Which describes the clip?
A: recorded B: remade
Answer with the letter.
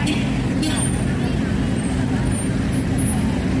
A